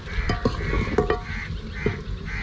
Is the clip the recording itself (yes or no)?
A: yes